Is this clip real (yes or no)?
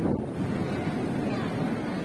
yes